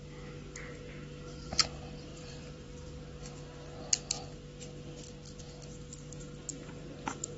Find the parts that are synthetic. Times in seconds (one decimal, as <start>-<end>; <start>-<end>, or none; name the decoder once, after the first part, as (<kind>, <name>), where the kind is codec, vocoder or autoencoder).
2.1-3.0 (vocoder, BigVGAN v2)